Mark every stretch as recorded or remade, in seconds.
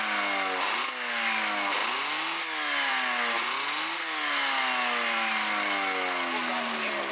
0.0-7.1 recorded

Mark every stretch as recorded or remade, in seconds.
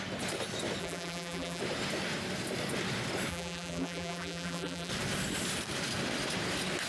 0.0-0.8 recorded; 0.8-1.6 remade; 1.6-3.3 recorded; 3.3-4.9 remade; 4.9-6.9 recorded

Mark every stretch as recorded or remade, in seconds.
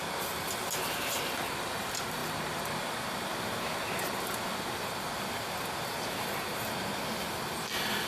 0.0-8.1 recorded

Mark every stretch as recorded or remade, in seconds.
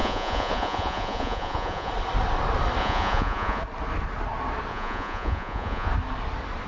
0.0-1.9 remade; 1.9-2.8 recorded; 2.8-3.6 remade; 3.6-4.7 recorded; 4.7-5.9 remade; 5.9-6.7 recorded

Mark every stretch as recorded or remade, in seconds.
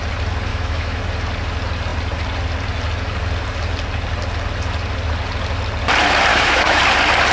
0.0-0.5 recorded; 0.5-1.0 remade; 1.0-6.3 recorded; 6.3-6.8 remade; 6.8-7.3 recorded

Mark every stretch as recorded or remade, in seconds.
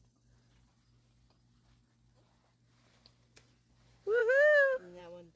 0.0-4.2 recorded; 4.2-5.0 remade; 5.0-5.4 recorded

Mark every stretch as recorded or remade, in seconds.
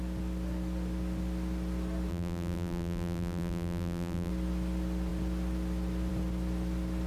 0.0-2.1 recorded; 2.1-4.3 remade; 4.3-7.1 recorded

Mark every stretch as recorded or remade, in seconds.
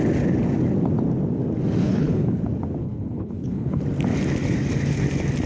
0.0-1.8 recorded; 1.8-2.4 remade; 2.4-2.8 recorded; 2.8-3.8 remade; 3.8-5.5 recorded